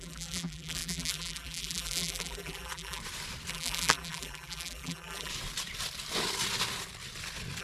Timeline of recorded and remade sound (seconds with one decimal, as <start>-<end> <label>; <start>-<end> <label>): 0.0-3.0 remade; 3.0-3.5 recorded; 3.5-5.3 remade; 5.3-7.6 recorded